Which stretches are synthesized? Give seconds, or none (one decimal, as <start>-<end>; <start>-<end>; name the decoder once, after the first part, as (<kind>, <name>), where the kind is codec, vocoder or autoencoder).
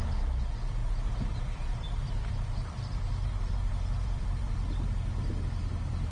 0.8-4.5 (vocoder, BigVGAN v2)